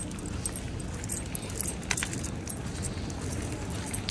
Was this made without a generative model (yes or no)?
yes